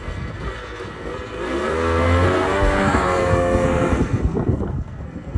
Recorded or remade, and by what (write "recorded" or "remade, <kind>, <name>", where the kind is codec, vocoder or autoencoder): remade, codec, SNAC